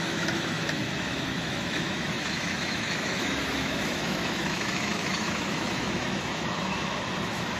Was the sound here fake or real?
fake